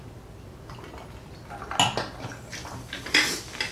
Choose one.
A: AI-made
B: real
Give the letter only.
B